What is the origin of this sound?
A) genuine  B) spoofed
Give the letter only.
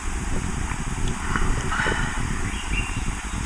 A